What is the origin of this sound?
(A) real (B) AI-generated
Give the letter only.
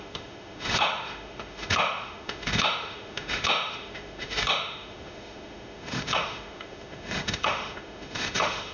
B